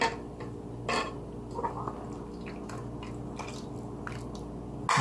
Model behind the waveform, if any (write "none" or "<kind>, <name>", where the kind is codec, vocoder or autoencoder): none